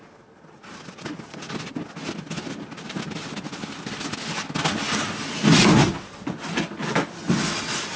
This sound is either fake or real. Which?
real